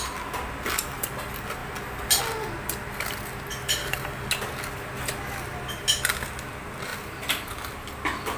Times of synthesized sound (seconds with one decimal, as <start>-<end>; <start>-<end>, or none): 3.8-4.3